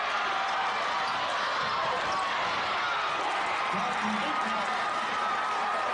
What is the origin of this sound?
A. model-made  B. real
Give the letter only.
B